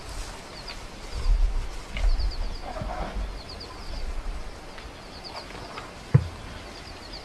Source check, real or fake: real